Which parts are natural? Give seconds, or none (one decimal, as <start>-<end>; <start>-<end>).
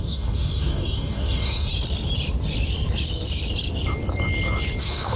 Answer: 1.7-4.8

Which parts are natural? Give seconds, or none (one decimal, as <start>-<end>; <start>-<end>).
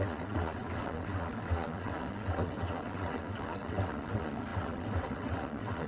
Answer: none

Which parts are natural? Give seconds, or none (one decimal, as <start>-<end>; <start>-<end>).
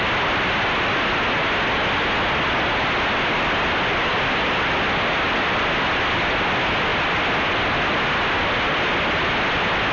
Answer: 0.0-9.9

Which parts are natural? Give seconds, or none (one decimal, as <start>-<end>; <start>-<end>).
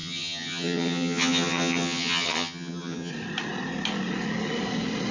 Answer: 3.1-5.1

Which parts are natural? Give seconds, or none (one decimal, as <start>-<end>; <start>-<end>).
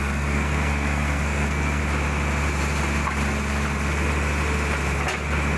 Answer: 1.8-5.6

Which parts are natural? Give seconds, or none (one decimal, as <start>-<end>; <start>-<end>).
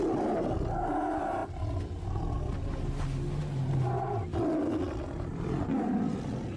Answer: 0.0-6.6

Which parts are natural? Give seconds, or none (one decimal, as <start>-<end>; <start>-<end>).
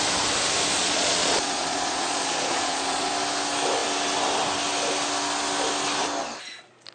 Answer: 0.0-0.8; 3.1-6.9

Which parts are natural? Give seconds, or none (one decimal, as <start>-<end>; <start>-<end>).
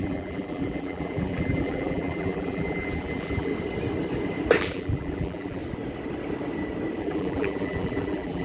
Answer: 3.5-4.6; 5.6-7.0